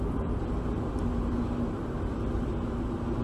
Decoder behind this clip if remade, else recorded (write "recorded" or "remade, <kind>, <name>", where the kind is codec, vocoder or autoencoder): recorded